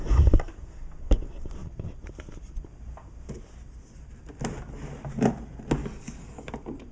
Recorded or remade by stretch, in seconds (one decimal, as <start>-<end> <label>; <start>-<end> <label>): 0.0-5.8 recorded; 5.8-6.5 remade; 6.5-6.9 recorded